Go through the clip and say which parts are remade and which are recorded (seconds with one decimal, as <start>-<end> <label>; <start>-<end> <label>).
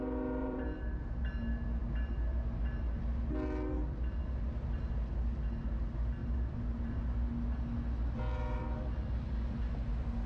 0.0-0.4 recorded; 0.4-1.1 remade; 1.1-6.2 recorded; 6.2-7.0 remade; 7.0-10.3 recorded